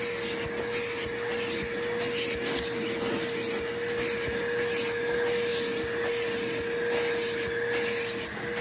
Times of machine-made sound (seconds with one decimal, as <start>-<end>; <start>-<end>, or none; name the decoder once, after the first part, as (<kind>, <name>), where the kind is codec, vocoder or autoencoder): none